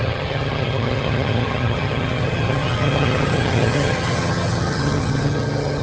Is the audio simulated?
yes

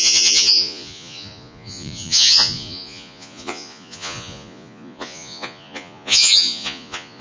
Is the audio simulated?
yes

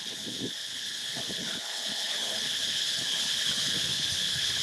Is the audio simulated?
yes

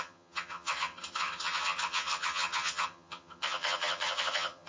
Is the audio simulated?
yes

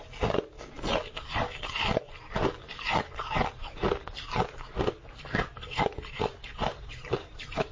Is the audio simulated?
no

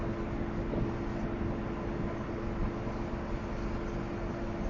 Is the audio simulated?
no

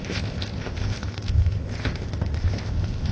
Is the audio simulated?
yes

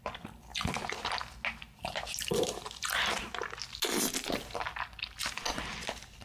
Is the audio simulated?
no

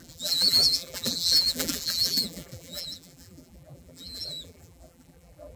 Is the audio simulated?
yes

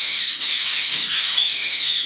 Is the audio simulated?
yes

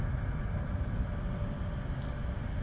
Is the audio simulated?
no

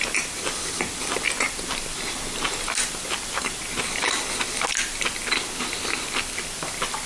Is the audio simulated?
no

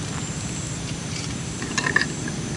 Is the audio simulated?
yes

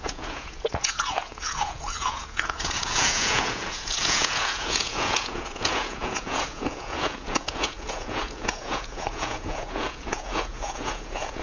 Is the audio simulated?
yes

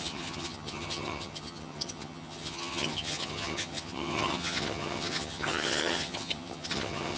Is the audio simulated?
yes